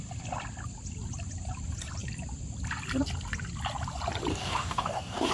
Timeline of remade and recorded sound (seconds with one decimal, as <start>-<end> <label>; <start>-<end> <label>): 0.0-4.3 recorded; 4.3-5.3 remade